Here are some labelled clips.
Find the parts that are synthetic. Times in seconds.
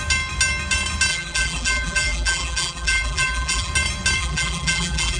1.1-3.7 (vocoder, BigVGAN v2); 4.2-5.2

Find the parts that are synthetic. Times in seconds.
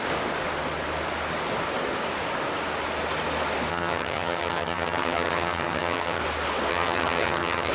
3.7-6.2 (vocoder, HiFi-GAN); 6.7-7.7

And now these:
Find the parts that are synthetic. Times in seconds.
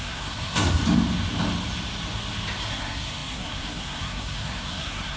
0.0-0.8 (codec, SNAC); 2.6-5.2